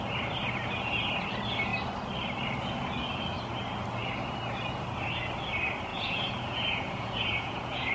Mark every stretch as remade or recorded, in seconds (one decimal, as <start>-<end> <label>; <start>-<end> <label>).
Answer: 0.0-5.9 recorded; 5.9-7.9 remade